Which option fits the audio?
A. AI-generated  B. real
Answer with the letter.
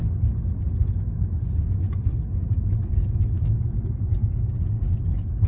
B